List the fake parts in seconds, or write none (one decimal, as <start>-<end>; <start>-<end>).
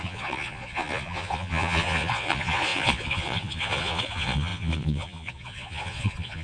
0.0-6.4